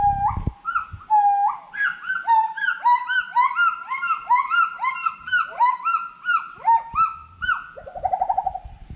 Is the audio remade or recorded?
recorded